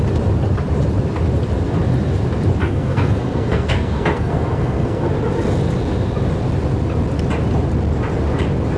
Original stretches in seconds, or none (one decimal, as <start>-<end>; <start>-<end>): 0.0-2.6; 5.1-8.8